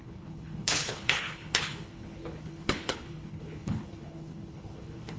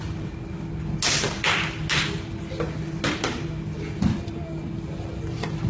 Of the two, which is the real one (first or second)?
second